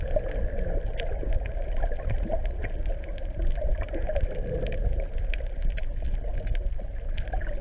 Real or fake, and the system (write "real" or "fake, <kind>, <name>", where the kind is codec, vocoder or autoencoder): real